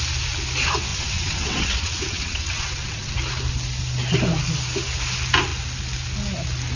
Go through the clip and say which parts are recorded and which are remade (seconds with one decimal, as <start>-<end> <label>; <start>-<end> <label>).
0.0-0.9 recorded; 0.9-3.1 remade; 3.1-6.8 recorded